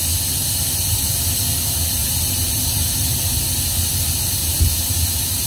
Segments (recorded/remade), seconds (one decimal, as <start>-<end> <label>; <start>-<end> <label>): 0.0-0.4 recorded; 0.4-1.3 remade; 1.3-2.0 recorded; 2.0-3.4 remade; 3.4-4.4 recorded; 4.4-5.5 remade